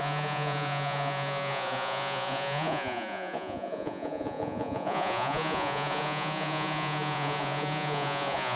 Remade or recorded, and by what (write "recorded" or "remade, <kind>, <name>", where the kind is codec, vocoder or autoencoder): remade, vocoder, Vocos